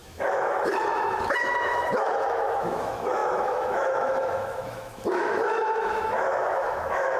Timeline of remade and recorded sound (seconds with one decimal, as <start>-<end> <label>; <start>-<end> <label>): 0.0-7.2 remade